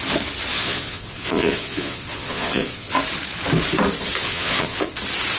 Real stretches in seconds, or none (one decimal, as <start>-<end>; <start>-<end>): 0.0-0.5; 3.0-4.2; 4.9-5.4